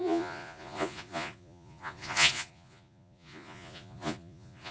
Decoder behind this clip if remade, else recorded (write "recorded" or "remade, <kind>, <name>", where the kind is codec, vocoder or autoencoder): remade, vocoder, Vocos